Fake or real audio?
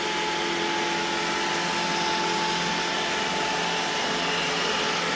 real